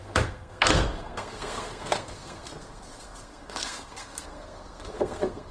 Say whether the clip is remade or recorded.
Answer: remade